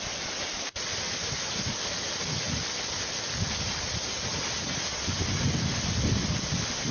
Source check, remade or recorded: recorded